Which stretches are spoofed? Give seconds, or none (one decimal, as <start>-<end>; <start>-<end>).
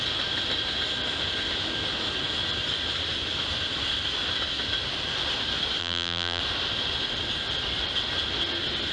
5.8-6.4